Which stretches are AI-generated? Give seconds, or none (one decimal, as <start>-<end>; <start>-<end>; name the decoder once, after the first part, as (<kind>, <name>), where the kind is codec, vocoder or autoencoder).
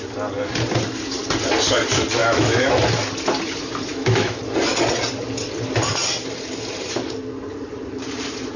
2.2-2.7 (autoencoder, DAC-VAE); 3.9-4.4